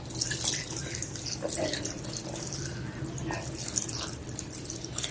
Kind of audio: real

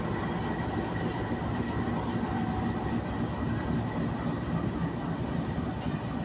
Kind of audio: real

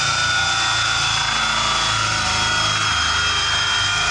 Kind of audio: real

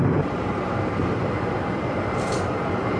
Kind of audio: fake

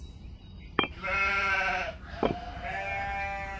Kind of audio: fake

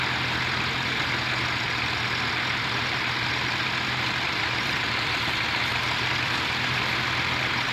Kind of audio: fake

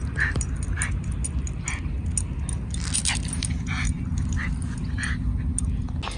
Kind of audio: real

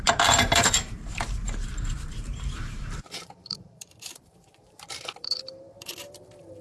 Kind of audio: fake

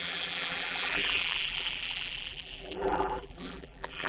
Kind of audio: fake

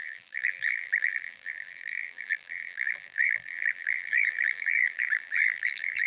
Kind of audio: fake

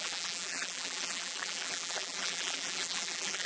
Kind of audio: fake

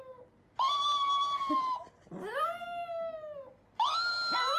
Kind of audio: real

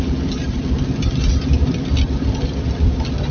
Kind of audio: real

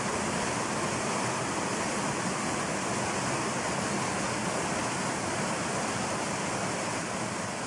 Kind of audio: real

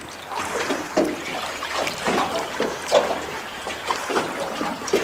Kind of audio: fake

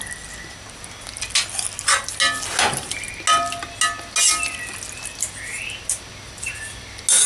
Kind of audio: real